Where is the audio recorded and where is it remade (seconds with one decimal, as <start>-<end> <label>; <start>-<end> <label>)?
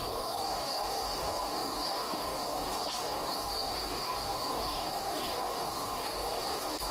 0.0-6.9 remade